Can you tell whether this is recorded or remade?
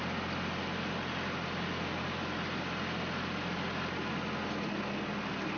recorded